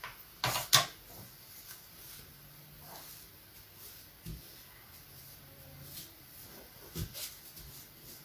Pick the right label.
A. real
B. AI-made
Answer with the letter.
A